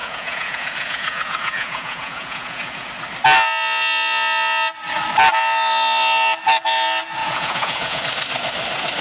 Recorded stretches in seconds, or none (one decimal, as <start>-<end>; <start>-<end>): 2.9-7.2; 8.0-9.0

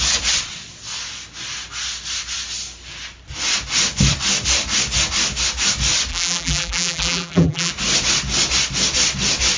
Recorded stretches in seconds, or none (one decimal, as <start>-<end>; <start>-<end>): 0.0-6.1; 7.7-9.6

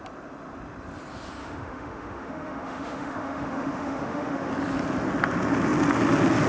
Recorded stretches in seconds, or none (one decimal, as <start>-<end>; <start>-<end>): 0.0-1.4; 4.5-6.5

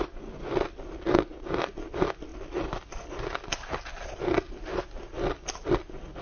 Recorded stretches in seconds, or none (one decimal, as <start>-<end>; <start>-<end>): 0.0-6.2

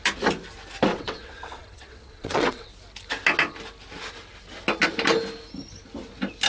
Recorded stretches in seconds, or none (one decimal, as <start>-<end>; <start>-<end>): 0.0-0.9; 2.7-6.5

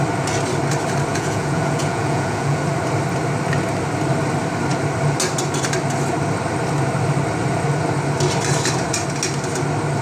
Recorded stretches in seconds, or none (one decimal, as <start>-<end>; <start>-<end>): 0.0-1.1; 2.6-10.0

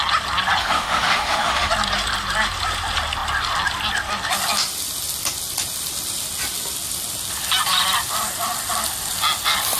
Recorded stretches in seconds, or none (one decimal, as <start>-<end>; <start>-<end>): 0.0-0.6; 1.7-9.8

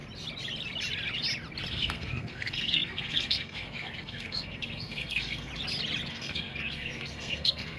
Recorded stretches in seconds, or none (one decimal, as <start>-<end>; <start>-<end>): 0.0-1.7; 5.5-6.1